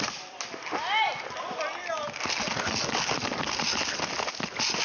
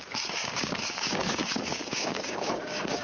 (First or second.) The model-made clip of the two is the second